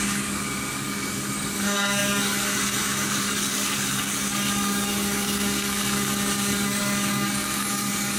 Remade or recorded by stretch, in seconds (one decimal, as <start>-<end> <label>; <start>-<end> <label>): 0.0-8.2 remade